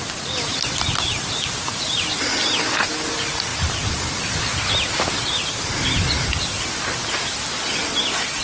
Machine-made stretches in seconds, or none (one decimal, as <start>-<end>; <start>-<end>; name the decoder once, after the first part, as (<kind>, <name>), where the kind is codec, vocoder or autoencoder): none